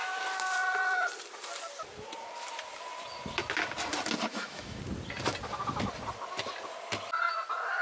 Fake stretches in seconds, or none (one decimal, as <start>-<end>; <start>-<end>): 4.3-4.8